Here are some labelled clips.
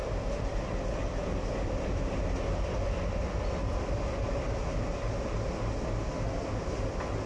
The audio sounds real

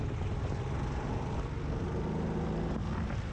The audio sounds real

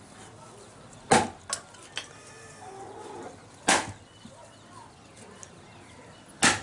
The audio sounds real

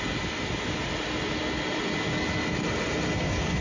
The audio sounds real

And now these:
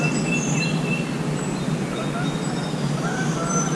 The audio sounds real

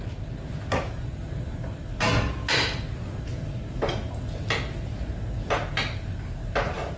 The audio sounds real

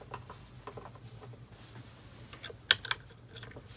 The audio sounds real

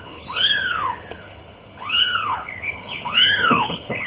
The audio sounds fake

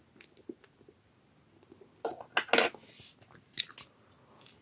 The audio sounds real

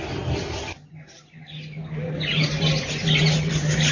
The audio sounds real